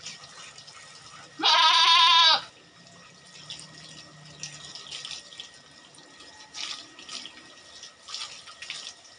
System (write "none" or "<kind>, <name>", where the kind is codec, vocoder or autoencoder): none